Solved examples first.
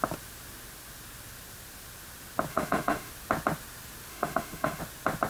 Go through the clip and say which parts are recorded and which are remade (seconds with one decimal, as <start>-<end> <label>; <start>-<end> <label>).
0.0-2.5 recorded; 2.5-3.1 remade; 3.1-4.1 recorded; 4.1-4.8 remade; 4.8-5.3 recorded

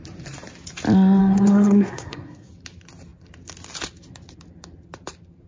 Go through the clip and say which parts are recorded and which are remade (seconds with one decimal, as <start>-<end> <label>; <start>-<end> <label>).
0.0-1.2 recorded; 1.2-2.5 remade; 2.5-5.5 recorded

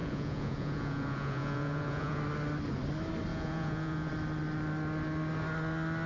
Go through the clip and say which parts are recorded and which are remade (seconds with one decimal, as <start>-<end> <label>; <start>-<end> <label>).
0.0-2.2 remade; 2.2-3.3 recorded; 3.3-4.1 remade; 4.1-6.1 recorded

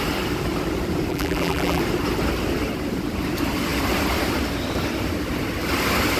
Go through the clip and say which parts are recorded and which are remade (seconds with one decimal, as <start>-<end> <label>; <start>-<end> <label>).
0.0-1.1 recorded; 1.1-1.8 remade; 1.8-6.2 recorded

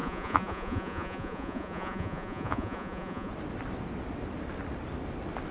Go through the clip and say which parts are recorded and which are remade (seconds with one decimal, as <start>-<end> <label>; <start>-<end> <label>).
0.0-3.3 remade; 3.3-5.5 recorded